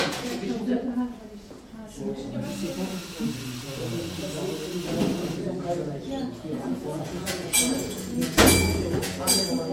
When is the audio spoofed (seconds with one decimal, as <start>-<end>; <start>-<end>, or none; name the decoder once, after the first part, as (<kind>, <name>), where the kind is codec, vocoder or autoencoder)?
0.0-1.8 (vocoder, Vocos); 6.2-9.7